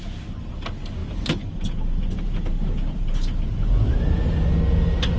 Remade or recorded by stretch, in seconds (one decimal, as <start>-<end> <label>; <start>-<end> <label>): 0.0-5.2 recorded